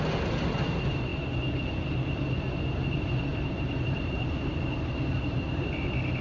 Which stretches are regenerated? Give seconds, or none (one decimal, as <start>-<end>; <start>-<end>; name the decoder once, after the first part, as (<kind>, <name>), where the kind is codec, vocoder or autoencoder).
3.3-5.7 (vocoder, BigVGAN v2)